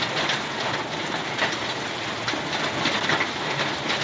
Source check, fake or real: real